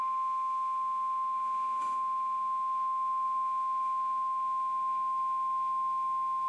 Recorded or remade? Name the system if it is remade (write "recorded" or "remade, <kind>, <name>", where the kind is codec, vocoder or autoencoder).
remade, autoencoder, DAC-VAE